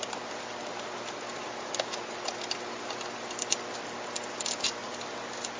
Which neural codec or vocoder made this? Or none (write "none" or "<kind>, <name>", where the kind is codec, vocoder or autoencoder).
none